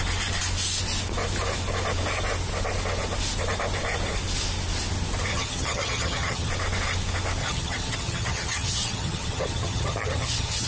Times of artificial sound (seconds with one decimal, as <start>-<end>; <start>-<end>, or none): 5.3-6.5; 7.4-10.7